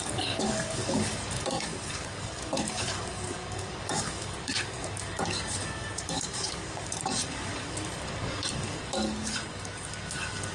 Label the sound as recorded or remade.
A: remade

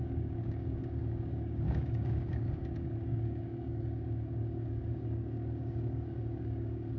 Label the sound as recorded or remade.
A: remade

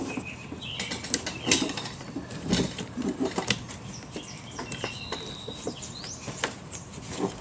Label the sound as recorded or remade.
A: recorded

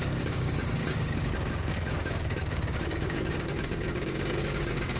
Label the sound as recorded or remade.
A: remade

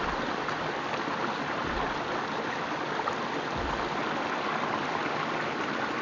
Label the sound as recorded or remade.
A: recorded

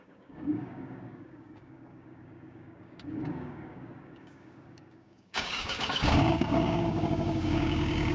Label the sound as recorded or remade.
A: remade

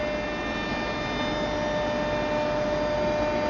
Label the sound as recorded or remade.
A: recorded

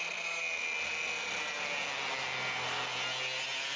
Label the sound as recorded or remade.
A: recorded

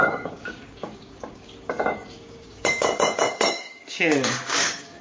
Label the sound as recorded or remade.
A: remade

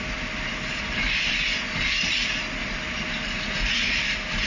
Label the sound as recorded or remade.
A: recorded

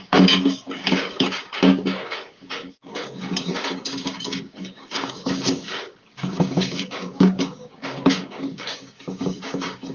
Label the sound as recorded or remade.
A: remade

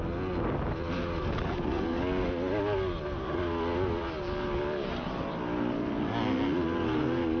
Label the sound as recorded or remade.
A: recorded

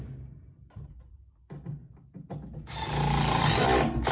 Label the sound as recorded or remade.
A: recorded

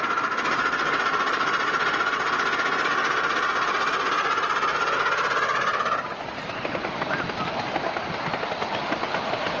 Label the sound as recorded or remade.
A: recorded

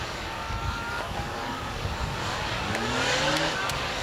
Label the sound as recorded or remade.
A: remade